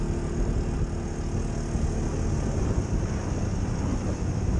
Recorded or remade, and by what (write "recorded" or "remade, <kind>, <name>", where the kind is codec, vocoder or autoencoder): recorded